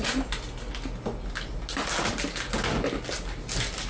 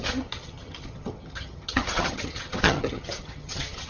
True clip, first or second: first